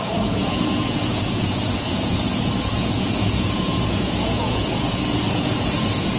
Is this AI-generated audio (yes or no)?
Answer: yes